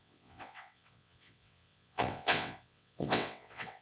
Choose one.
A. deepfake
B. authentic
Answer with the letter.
A